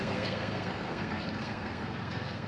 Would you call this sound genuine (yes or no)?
no